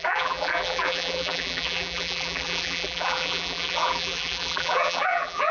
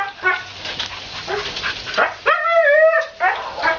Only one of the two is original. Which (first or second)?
second